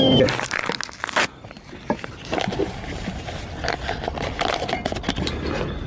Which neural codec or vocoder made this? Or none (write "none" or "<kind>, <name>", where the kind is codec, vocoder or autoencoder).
none